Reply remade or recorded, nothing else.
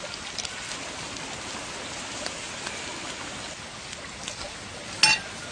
recorded